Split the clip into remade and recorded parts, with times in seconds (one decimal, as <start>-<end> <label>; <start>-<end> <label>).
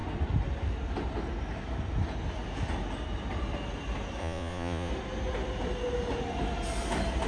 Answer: 0.0-4.2 recorded; 4.2-4.9 remade; 4.9-7.3 recorded